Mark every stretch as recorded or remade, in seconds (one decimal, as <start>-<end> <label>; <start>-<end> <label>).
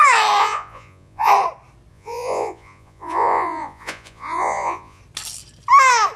0.0-0.4 recorded; 0.4-1.3 remade; 1.3-1.9 recorded; 1.9-5.0 remade; 5.0-6.2 recorded